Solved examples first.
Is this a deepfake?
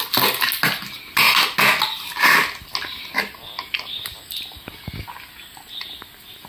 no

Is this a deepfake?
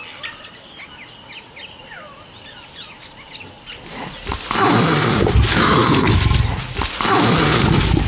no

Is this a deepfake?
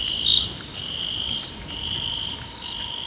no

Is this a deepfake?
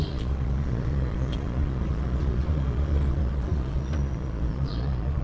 yes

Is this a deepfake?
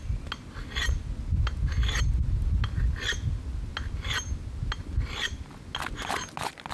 no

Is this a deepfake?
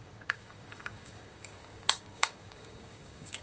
yes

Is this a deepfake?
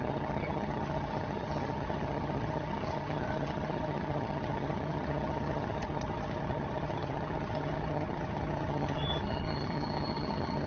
yes